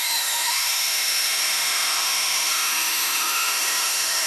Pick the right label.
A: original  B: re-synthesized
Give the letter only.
B